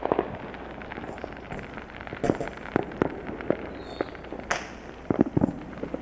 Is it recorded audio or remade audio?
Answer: recorded